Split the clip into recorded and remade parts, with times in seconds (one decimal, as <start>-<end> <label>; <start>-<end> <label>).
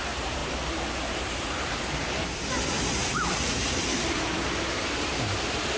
0.0-5.8 remade